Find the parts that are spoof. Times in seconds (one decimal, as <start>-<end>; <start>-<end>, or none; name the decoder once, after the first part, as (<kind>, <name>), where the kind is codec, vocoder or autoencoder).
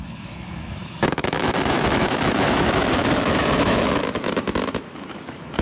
0.0-5.6 (autoencoder, DAC-VAE)